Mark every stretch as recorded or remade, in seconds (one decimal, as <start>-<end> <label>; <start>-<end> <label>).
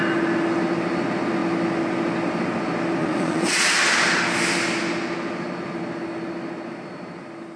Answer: 0.0-3.0 recorded; 3.0-3.7 remade; 3.7-7.6 recorded